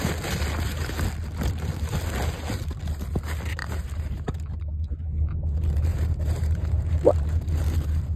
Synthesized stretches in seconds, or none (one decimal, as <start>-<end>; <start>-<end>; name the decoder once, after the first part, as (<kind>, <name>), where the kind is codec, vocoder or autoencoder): 3.6-4.6 (vocoder, BigVGAN v2); 5.9-7.6